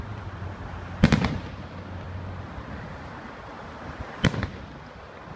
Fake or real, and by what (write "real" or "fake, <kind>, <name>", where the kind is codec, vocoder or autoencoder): real